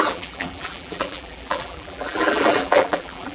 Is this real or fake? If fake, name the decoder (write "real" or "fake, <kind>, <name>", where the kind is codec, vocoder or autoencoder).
fake, vocoder, BigVGAN v2